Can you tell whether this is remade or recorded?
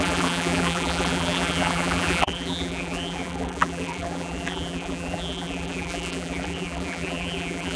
remade